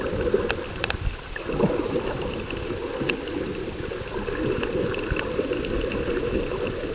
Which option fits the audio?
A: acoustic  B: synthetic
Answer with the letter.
A